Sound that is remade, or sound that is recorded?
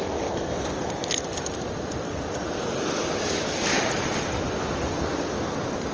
recorded